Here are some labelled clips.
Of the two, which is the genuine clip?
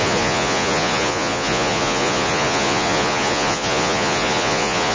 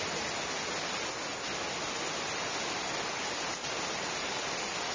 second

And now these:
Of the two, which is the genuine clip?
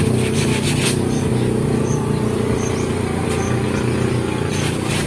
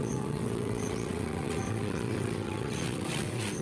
first